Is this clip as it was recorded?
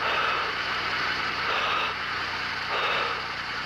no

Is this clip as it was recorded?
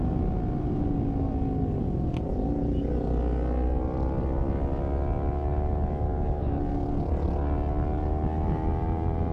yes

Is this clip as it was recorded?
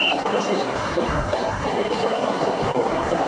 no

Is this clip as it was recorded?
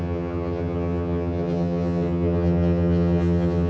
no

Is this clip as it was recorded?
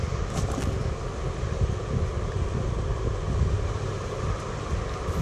yes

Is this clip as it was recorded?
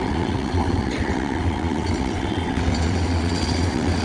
no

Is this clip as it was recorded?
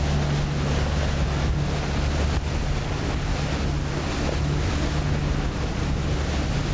yes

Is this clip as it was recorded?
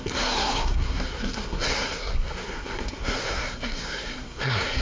no